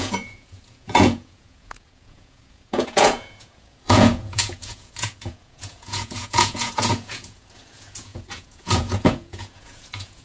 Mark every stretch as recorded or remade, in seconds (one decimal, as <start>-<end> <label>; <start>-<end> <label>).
0.0-10.2 remade